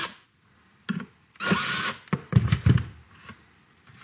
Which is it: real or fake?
real